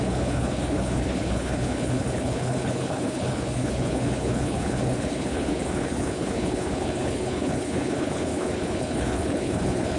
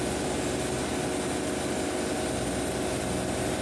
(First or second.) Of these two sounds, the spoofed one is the first